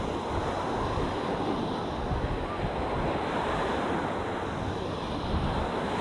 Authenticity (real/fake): real